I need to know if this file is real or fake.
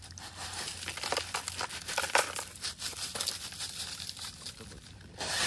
real